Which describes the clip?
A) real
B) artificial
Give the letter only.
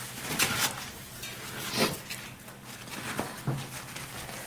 A